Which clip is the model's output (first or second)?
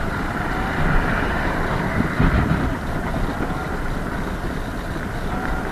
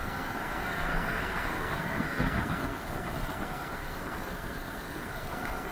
second